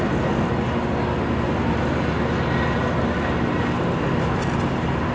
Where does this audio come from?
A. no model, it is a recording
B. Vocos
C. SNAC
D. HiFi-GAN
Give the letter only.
A